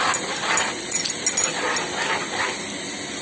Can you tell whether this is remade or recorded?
recorded